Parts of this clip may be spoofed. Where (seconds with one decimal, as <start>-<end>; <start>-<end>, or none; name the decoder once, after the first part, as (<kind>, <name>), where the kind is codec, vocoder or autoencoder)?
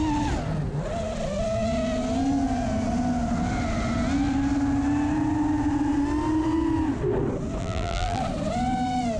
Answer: 7.6-8.2 (vocoder, BigVGAN v2)